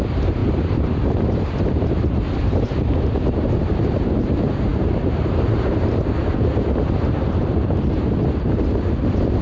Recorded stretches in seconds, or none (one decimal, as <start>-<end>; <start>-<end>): none